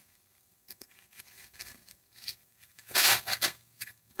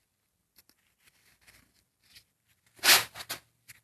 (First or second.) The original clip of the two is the second